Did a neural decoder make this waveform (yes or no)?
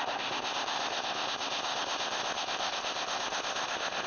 yes